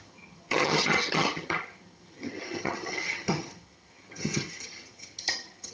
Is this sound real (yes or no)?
no